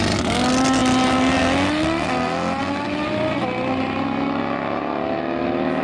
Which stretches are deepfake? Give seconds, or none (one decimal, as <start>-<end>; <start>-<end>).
none